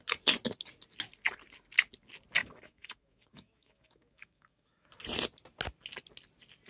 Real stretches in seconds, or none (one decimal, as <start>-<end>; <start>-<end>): 0.0-2.4; 4.9-6.7

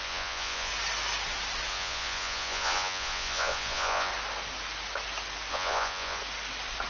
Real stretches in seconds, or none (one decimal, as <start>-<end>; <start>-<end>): 0.7-1.7; 4.1-5.5; 6.2-6.9